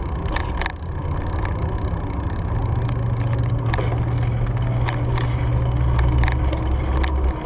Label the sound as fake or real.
real